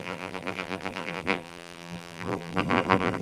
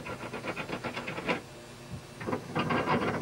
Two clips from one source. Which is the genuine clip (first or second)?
second